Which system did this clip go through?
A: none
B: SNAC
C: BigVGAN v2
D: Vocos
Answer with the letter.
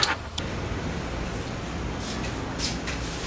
A